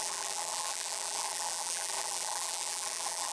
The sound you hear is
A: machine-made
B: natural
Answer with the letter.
A